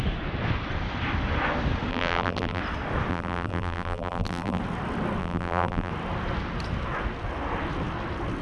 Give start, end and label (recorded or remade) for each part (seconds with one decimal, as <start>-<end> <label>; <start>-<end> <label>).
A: 0.0-1.9 recorded; 1.9-2.6 remade; 2.6-3.1 recorded; 3.1-4.6 remade; 4.6-5.2 recorded; 5.2-5.9 remade; 5.9-8.4 recorded